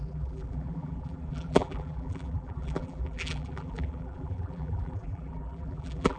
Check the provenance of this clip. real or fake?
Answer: fake